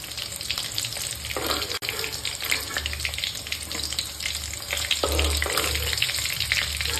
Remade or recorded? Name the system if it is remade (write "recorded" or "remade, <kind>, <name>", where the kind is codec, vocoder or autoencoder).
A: recorded